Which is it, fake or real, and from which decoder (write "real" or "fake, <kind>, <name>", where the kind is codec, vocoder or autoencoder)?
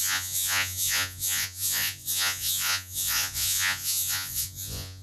fake, vocoder, Vocos